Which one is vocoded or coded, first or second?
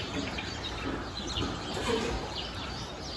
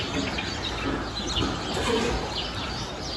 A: first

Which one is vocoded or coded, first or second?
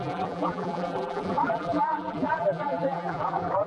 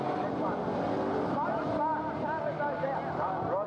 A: first